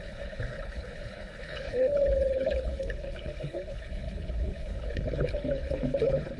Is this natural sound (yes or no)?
no